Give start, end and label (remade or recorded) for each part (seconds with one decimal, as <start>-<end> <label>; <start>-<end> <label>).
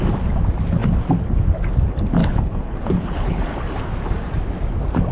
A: 0.0-2.2 recorded; 2.2-3.4 remade; 3.4-5.1 recorded